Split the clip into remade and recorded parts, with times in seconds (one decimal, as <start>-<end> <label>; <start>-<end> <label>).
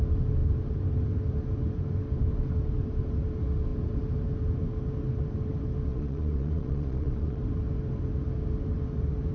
0.0-5.9 recorded; 5.9-7.4 remade; 7.4-9.3 recorded